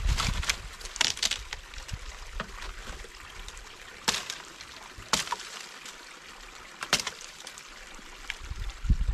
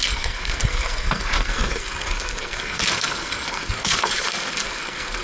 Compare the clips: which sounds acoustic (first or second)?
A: first